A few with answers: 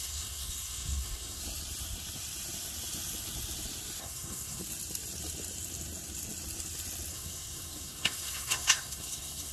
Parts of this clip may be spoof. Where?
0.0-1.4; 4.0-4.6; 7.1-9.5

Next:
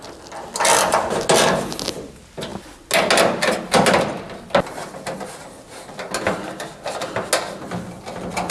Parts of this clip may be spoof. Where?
none

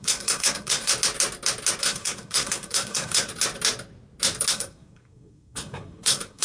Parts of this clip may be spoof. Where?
0.0-0.9; 1.8-3.3; 4.5-6.4

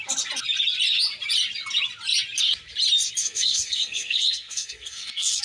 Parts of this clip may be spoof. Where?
3.2-5.4